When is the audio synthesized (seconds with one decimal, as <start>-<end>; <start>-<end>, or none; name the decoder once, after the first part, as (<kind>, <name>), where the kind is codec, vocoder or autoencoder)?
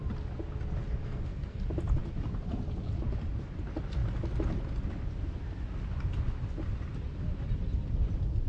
1.0-1.6 (codec, SNAC)